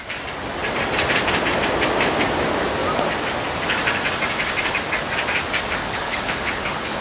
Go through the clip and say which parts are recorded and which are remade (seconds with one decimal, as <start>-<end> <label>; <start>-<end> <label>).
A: 0.0-5.8 recorded; 5.8-7.0 remade